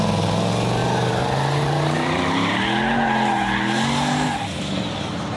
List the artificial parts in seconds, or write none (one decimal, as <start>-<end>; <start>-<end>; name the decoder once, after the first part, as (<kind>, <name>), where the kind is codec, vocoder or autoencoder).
0.8-2.5 (vocoder, BigVGAN v2)